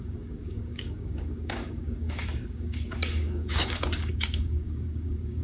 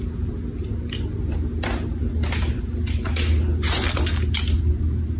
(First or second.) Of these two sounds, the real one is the second